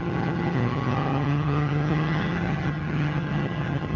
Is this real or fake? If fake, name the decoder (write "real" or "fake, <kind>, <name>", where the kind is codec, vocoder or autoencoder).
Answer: fake, vocoder, HiFi-GAN